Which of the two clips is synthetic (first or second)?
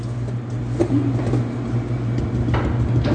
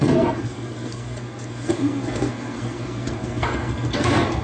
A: second